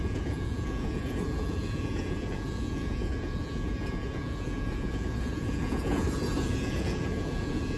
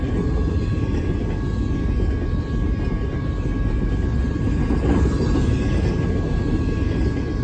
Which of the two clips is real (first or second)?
second